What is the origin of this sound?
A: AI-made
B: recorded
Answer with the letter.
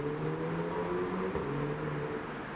B